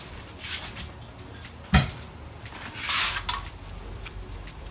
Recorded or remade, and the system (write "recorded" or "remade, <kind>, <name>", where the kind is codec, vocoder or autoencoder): recorded